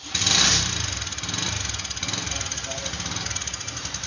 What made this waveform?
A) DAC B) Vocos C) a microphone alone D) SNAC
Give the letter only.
C